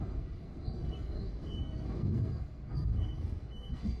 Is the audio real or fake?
fake